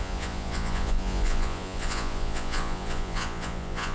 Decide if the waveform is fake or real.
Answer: fake